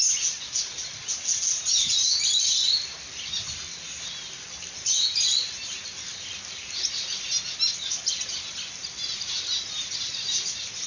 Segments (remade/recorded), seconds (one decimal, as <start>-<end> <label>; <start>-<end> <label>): 0.0-10.9 recorded